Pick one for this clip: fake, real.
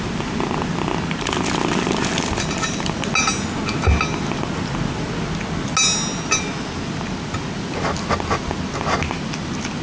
real